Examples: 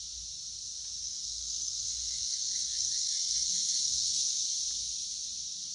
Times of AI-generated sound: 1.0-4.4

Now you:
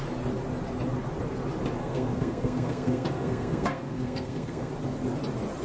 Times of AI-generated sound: 1.8-4.7

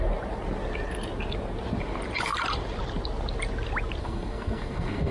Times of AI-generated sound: 4.0-5.1

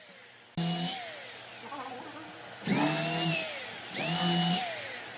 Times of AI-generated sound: none

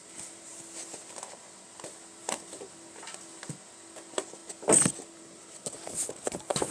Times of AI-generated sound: none

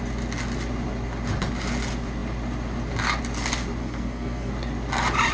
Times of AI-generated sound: 3.8-4.5

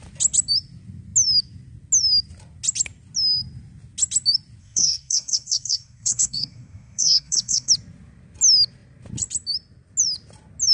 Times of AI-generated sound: 4.6-7.7